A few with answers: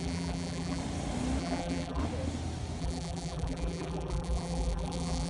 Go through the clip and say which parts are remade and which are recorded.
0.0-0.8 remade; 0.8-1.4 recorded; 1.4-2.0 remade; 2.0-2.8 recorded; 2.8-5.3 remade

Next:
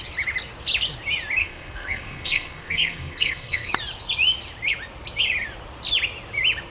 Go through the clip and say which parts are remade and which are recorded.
0.0-1.4 recorded; 1.4-3.7 remade; 3.7-6.7 recorded

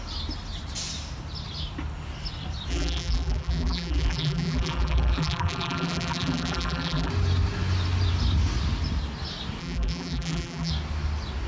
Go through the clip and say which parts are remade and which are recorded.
0.0-2.7 recorded; 2.7-7.1 remade; 7.1-9.6 recorded; 9.6-10.7 remade; 10.7-11.5 recorded

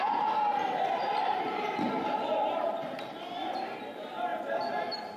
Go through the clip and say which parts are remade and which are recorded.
0.0-1.0 recorded; 1.0-1.7 remade; 1.7-2.3 recorded; 2.3-2.9 remade; 2.9-5.2 recorded